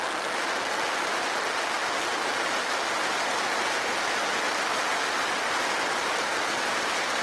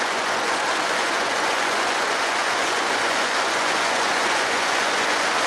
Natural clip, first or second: first